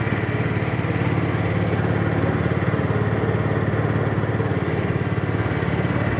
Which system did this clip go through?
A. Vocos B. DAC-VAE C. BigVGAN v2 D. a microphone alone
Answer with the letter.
D